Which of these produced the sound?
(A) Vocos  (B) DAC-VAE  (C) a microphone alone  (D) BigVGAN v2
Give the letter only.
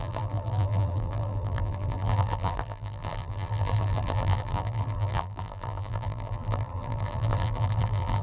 D